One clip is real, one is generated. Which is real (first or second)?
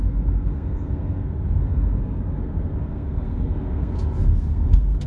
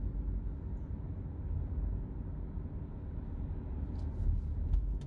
second